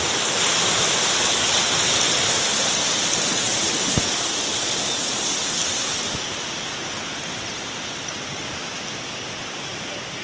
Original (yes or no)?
yes